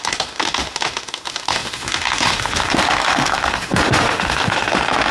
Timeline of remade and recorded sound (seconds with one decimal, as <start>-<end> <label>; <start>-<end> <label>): 0.0-5.1 remade